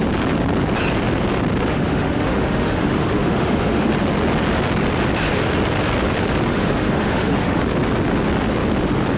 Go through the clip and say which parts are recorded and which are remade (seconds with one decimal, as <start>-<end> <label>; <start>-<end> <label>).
0.0-1.7 recorded; 1.7-3.9 remade; 3.9-6.5 recorded; 6.5-7.6 remade; 7.6-9.2 recorded